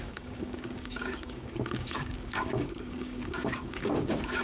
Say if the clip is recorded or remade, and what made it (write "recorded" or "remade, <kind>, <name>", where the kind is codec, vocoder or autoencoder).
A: remade, codec, DAC